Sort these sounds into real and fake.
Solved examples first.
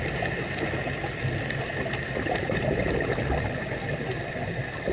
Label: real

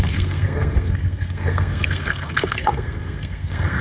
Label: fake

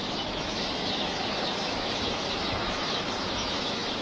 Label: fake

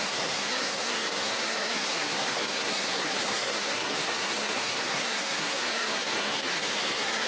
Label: fake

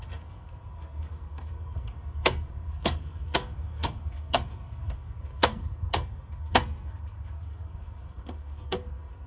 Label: fake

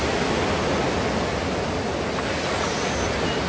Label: real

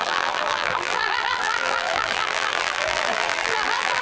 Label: fake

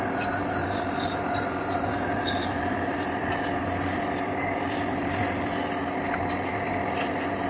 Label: real